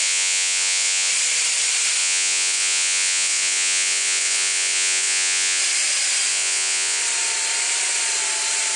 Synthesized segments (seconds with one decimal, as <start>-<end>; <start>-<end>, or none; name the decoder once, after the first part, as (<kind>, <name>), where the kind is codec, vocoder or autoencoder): 0.0-1.1 (vocoder, Vocos); 2.0-5.6; 6.3-7.0